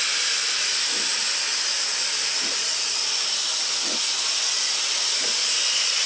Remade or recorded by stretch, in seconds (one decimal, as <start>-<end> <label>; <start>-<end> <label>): 0.0-1.5 remade; 1.5-2.0 recorded; 2.0-6.1 remade